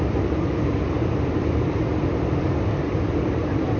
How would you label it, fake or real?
real